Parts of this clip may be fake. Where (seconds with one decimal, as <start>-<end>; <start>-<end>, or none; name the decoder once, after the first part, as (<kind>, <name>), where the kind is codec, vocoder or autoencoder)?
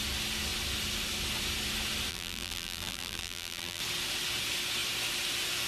2.1-3.8 (vocoder, BigVGAN v2)